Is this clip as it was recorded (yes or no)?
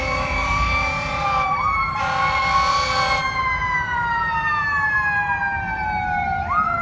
no